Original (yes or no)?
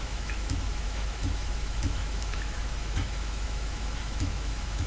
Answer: no